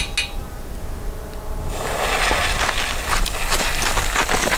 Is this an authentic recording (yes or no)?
yes